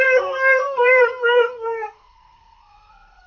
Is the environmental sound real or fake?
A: fake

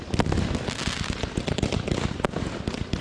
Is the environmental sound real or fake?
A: real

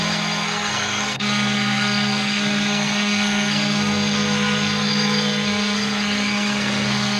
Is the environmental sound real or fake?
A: fake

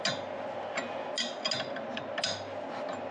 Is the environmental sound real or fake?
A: real